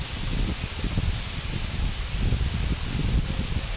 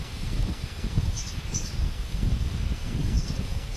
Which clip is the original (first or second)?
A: first